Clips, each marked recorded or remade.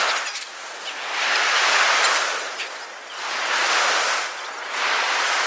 recorded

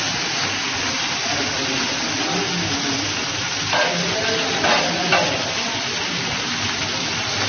recorded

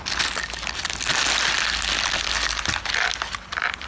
recorded